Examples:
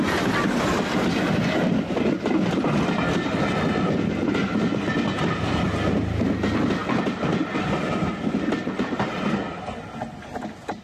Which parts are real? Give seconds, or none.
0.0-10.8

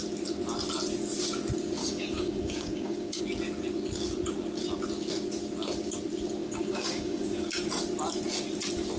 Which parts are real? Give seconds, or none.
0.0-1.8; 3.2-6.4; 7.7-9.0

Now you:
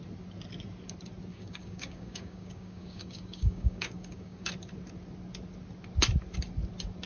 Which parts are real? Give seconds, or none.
0.0-1.3; 4.5-7.1

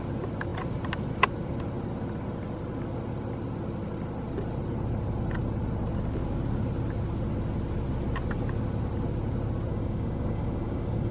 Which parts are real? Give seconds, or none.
0.0-9.7

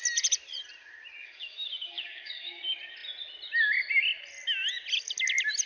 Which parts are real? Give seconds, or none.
0.0-1.2; 2.6-5.7

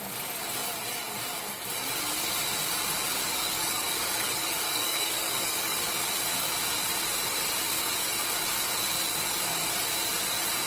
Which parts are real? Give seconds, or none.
0.0-3.2; 5.9-10.7

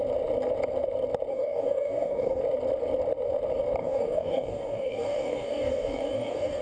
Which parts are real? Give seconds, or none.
0.0-1.3; 2.4-3.8

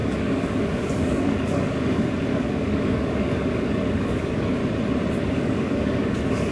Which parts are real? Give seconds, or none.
4.6-5.2